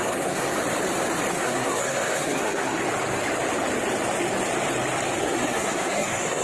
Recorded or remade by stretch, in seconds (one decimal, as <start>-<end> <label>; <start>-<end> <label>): 0.0-0.5 remade; 0.5-1.3 recorded; 1.3-2.8 remade; 2.8-5.2 recorded; 5.2-6.4 remade